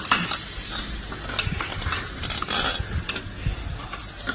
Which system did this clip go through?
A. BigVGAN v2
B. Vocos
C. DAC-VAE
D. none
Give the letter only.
D